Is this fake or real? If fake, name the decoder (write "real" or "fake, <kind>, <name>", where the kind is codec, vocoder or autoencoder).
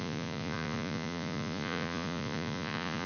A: fake, vocoder, Vocos